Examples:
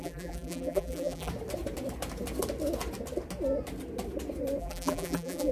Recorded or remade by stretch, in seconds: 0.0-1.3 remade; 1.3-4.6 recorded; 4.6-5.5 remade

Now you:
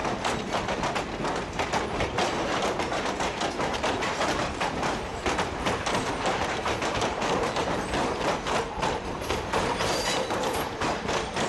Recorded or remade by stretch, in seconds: 0.0-1.5 recorded; 1.5-11.5 remade

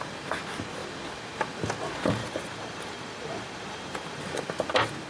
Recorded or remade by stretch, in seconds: 0.0-2.2 recorded; 2.2-4.2 remade; 4.2-5.1 recorded

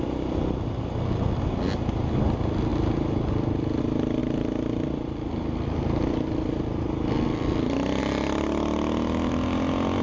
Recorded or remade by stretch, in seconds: 0.0-2.7 recorded; 2.7-3.8 remade; 3.8-4.2 recorded; 4.2-8.0 remade; 8.0-10.0 recorded

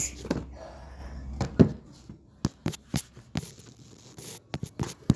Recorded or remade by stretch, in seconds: 0.0-2.6 recorded; 2.6-3.2 remade; 3.2-5.2 recorded

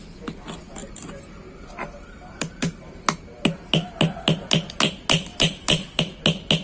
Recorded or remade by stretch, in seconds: 0.0-0.8 recorded; 0.8-2.9 remade; 2.9-5.3 recorded; 5.3-6.0 remade; 6.0-6.6 recorded

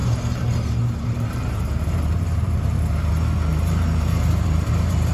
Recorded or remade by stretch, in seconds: 0.0-3.1 remade; 3.1-3.5 recorded; 3.5-5.1 remade

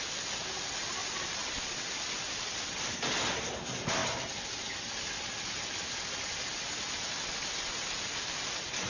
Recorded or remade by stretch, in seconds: 0.0-1.0 recorded; 1.0-3.0 remade; 3.0-8.9 recorded